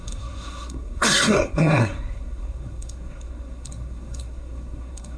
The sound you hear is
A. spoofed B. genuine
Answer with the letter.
A